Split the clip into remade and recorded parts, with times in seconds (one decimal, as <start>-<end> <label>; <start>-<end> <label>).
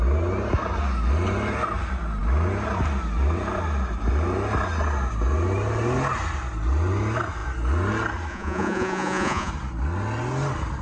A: 0.0-8.3 recorded; 8.3-9.5 remade; 9.5-10.8 recorded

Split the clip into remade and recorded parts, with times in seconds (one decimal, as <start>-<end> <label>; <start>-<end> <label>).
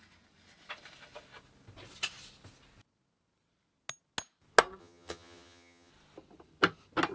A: 0.0-4.8 recorded; 4.8-5.9 remade; 5.9-7.1 recorded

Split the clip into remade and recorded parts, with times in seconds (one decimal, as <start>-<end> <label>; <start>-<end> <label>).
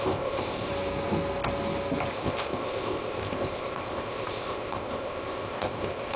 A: 0.0-0.7 remade; 0.7-2.1 recorded; 2.1-6.2 remade